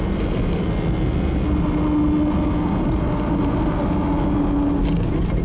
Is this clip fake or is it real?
real